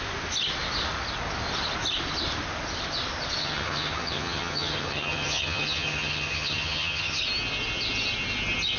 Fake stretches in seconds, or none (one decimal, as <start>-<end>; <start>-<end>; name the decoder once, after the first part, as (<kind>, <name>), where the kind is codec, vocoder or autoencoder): 3.4-7.2 (vocoder, HiFi-GAN)